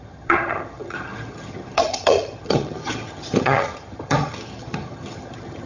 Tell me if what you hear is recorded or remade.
remade